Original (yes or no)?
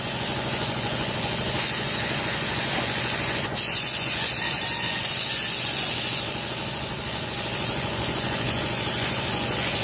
no